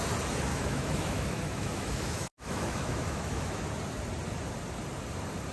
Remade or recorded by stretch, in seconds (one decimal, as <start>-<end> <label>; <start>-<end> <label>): 0.0-0.5 recorded; 0.5-3.6 remade; 3.6-5.5 recorded